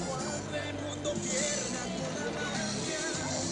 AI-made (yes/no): no